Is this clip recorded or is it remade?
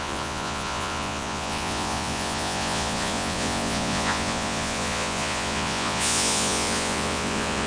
remade